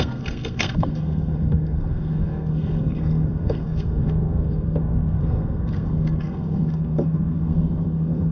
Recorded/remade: remade